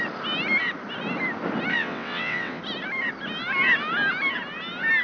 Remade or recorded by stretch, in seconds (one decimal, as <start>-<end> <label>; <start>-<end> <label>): 0.0-1.7 recorded; 1.7-2.6 remade; 2.6-5.0 recorded